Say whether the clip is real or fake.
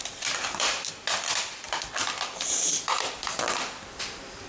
fake